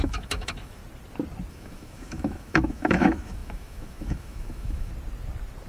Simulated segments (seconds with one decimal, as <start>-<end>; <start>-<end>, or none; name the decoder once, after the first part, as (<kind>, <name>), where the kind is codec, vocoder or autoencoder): 0.0-0.8 (autoencoder, DAC-VAE); 1.5-4.9